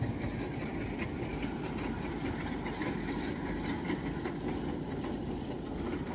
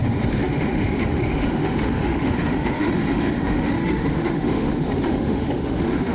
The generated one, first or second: second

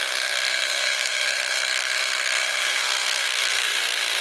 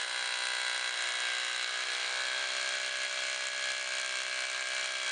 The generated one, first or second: first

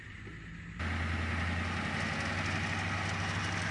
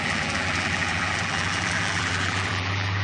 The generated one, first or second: second